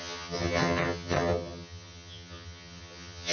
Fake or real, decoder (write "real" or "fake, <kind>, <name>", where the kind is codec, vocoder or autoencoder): fake, vocoder, HiFi-GAN